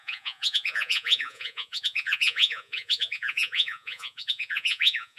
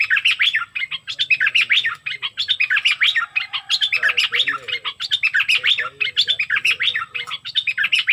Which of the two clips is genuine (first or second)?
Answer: second